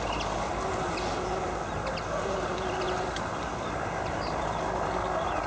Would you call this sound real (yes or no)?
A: yes